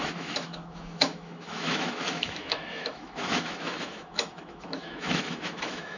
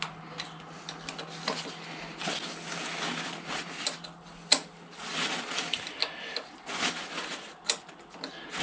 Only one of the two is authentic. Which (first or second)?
second